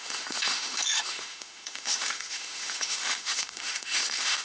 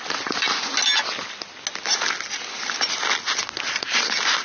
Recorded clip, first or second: second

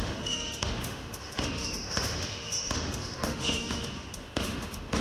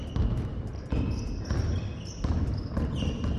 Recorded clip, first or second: second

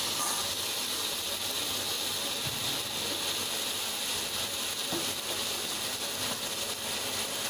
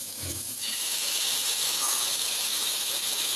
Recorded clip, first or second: first